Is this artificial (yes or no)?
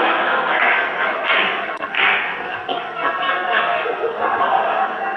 yes